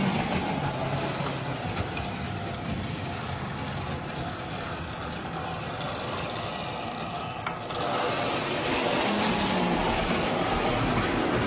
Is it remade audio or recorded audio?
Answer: recorded